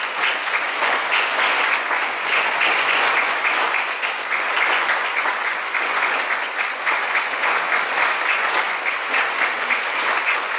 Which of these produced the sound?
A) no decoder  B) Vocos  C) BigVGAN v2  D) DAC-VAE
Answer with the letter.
B